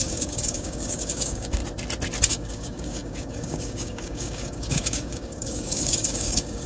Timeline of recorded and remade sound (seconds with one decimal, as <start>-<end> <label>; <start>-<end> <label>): 0.0-1.6 remade; 1.6-2.3 recorded; 2.3-6.7 remade